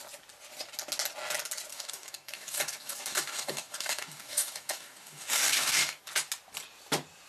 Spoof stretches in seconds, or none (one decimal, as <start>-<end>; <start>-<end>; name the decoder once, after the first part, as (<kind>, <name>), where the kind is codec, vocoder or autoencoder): 1.7-6.0 (codec, DAC)